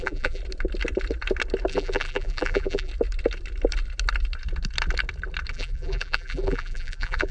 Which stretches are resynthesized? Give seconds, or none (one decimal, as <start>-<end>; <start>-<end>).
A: 0.0-0.4; 1.7-2.9; 5.5-7.3